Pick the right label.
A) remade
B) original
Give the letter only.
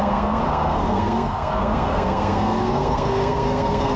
A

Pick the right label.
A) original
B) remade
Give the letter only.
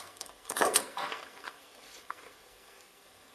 B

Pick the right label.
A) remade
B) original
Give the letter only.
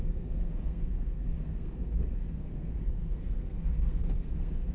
A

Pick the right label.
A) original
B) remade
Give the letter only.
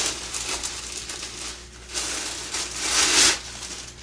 A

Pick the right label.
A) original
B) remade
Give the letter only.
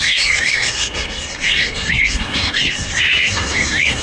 B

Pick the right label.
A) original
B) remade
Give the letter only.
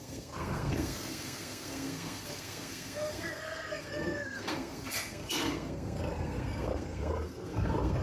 B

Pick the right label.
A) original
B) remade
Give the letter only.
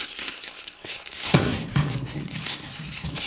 B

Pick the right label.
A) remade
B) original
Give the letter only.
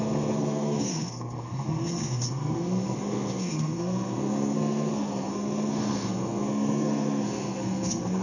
A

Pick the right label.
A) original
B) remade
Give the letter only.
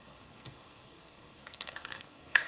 B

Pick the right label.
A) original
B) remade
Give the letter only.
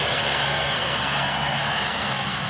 B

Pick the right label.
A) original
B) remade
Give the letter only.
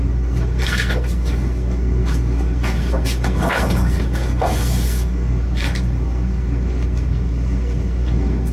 B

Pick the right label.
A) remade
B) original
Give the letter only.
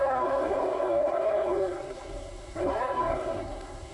A